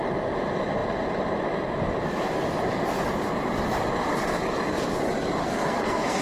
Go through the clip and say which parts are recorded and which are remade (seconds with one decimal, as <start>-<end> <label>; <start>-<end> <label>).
0.0-5.4 recorded; 5.4-6.2 remade